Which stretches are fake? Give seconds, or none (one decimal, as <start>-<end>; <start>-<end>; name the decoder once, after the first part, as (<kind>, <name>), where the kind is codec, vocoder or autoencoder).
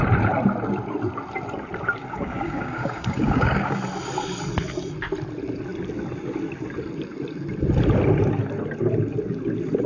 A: 2.0-3.8 (codec, DAC)